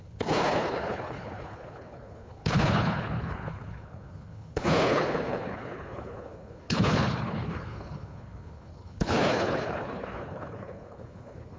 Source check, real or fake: fake